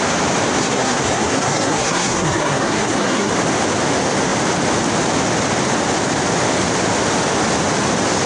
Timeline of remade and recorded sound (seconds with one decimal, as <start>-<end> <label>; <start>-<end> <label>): 0.0-0.6 recorded; 0.6-3.3 remade; 3.3-8.3 recorded